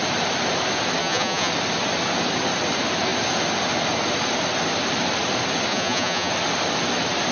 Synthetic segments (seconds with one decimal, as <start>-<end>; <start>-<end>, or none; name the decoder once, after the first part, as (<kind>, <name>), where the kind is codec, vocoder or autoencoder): 1.0-1.5 (vocoder, Vocos); 5.7-6.3